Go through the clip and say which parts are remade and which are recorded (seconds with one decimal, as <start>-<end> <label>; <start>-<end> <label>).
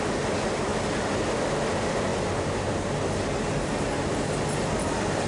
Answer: 0.0-5.3 recorded